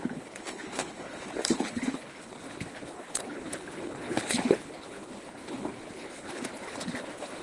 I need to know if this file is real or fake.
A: fake